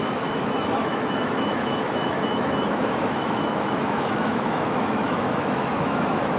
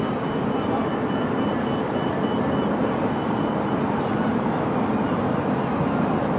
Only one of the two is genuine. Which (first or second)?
second